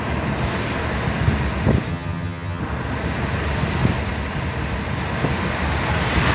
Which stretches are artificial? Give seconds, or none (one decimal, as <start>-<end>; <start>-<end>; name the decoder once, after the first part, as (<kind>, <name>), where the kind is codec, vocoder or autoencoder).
1.9-2.6 (vocoder, HiFi-GAN)